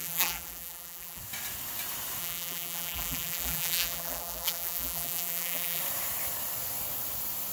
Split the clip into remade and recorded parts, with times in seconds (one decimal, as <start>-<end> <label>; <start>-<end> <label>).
0.0-1.2 remade; 1.2-2.2 recorded; 2.2-5.8 remade; 5.8-7.5 recorded